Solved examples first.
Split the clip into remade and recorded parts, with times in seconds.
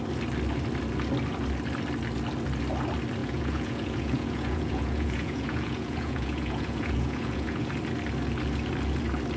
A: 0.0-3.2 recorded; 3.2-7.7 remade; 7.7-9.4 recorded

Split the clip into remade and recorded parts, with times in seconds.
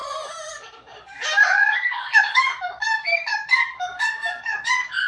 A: 0.0-0.5 recorded; 0.5-5.1 remade